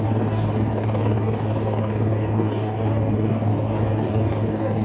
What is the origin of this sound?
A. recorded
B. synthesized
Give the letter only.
B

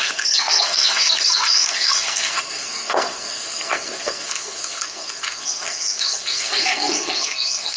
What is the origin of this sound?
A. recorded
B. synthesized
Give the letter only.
B